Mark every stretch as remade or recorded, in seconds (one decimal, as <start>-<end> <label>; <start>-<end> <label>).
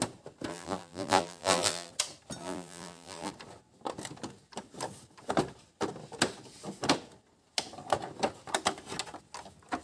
0.0-0.5 recorded; 0.5-1.9 remade; 1.9-2.4 recorded; 2.4-3.3 remade; 3.3-9.8 recorded